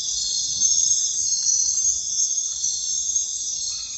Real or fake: real